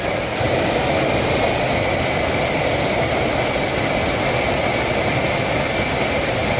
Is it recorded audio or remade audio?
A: recorded